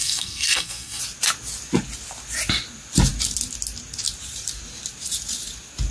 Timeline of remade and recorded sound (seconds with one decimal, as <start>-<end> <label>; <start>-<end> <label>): 0.0-1.0 remade; 1.0-5.9 recorded